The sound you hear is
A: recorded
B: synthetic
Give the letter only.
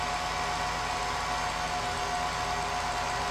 A